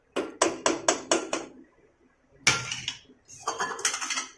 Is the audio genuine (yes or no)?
yes